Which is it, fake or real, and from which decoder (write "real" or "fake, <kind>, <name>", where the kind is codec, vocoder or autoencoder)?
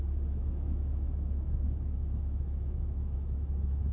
fake, autoencoder, DAC-VAE